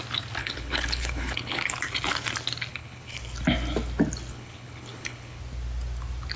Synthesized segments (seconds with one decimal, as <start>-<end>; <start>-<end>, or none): 0.4-1.7; 2.7-3.2; 4.3-5.4